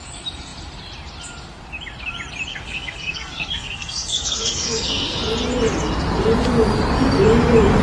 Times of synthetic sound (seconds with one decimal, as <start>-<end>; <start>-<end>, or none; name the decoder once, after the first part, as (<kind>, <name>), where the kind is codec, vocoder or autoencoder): 2.5-5.2 (codec, SNAC)